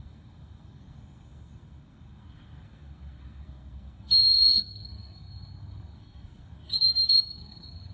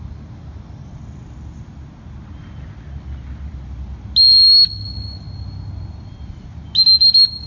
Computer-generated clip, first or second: first